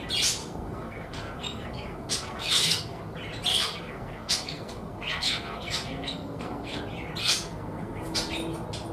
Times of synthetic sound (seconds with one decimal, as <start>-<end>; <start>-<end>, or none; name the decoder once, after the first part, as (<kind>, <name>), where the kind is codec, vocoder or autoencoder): 0.4-3.0 (codec, SNAC); 3.5-6.8; 7.2-8.0